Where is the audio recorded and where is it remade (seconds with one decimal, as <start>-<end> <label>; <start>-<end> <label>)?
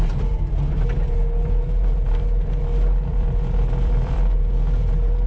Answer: 0.0-3.1 recorded; 3.1-4.4 remade; 4.4-5.3 recorded